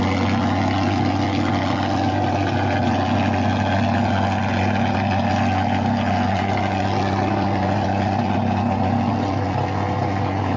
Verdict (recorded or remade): recorded